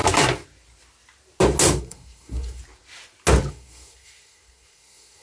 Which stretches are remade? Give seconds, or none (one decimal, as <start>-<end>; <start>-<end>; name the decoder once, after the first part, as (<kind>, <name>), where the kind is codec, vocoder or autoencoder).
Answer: 1.8-2.6 (codec, SNAC); 3.5-5.2